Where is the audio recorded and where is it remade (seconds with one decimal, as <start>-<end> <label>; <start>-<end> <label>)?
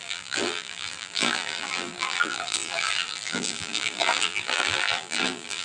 0.0-5.6 remade